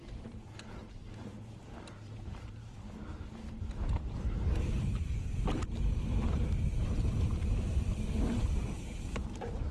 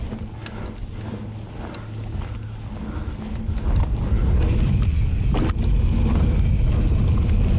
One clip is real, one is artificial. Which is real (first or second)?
second